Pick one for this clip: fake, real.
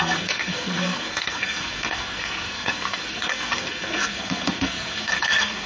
fake